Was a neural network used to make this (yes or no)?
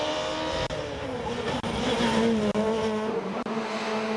no